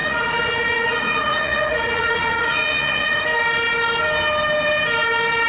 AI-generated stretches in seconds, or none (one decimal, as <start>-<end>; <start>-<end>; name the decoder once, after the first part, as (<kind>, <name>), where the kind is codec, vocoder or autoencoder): 0.0-3.2 (vocoder, Vocos)